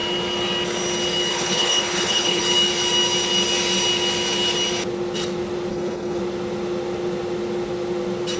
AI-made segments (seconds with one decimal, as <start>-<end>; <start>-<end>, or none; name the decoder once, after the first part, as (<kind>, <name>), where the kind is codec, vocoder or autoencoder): 1.3-2.4 (codec, HILCodec); 5.7-6.2